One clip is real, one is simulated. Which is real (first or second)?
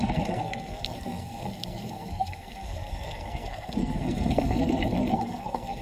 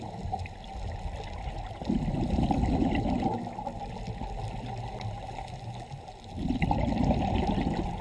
second